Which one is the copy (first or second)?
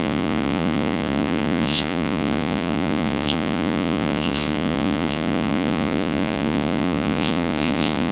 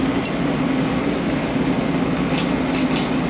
first